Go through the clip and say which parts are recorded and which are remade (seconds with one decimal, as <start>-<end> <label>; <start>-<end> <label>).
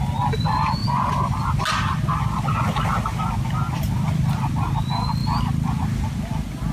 0.0-6.7 recorded